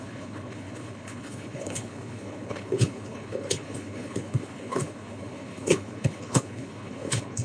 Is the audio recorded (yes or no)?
no